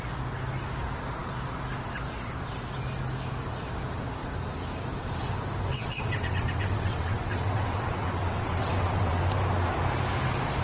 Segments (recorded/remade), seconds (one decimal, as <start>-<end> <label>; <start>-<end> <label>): 0.0-5.7 recorded; 5.7-9.2 remade; 9.2-10.6 recorded